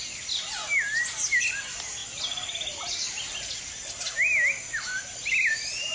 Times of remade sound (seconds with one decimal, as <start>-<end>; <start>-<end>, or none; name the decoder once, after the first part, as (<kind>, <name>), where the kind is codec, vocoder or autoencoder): none